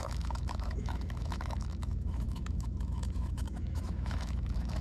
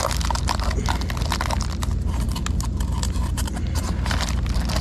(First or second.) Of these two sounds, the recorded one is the second